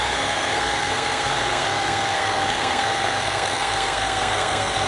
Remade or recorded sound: remade